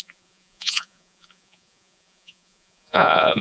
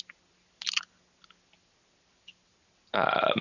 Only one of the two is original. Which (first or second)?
second